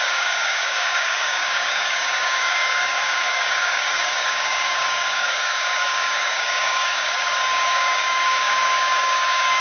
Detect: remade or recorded remade